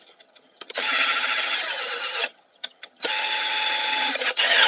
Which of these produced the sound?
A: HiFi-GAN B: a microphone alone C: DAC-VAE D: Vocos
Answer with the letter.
A